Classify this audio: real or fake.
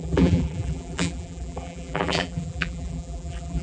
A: fake